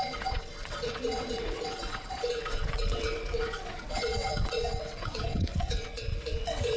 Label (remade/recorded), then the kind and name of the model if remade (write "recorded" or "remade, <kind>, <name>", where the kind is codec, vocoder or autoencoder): remade, vocoder, WaveNeXt